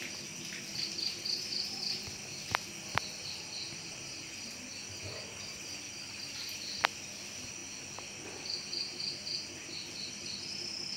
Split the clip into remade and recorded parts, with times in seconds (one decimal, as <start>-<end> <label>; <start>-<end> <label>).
0.0-11.0 recorded